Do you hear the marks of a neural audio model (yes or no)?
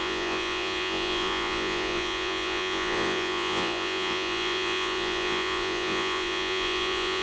yes